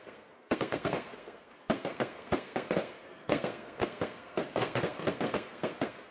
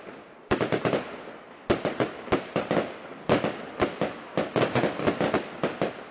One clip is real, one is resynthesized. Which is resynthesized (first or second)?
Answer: first